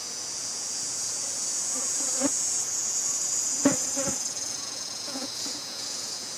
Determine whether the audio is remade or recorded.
remade